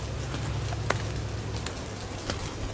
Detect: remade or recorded recorded